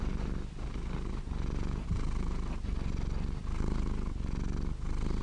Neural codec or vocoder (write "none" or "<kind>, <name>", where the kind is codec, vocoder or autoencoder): none